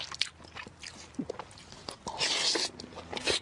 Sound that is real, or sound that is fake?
real